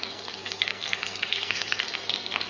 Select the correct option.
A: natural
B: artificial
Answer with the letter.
B